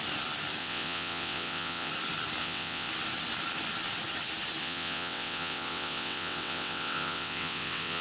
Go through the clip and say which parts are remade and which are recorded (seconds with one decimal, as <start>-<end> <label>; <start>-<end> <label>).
0.0-0.6 recorded; 0.6-1.9 remade; 1.9-2.4 recorded; 2.4-2.9 remade; 2.9-4.6 recorded; 4.6-8.0 remade